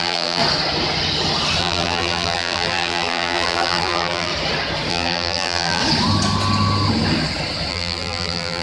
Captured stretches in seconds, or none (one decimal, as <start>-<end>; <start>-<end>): 0.4-1.6; 4.3-4.9; 5.8-7.7